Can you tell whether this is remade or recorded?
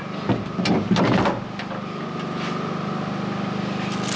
recorded